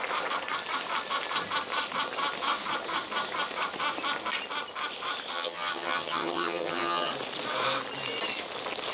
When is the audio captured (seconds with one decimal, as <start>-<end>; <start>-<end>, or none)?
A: 0.0-5.3; 7.1-8.9

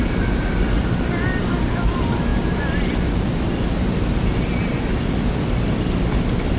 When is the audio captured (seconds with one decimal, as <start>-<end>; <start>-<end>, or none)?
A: 0.0-6.6

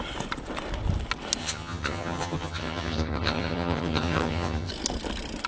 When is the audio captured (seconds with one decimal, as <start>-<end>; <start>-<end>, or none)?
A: 0.0-1.4; 4.7-5.5

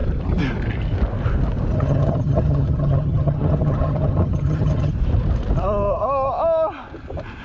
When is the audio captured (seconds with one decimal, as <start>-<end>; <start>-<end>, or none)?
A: 0.0-1.7; 4.9-7.4